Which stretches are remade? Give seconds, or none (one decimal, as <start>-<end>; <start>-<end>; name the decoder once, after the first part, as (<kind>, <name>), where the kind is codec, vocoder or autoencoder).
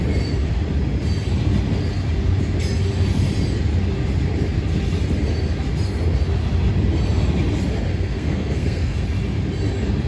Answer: 7.9-9.0 (codec, SNAC)